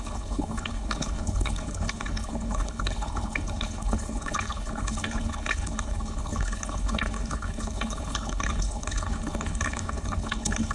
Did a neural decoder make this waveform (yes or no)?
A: yes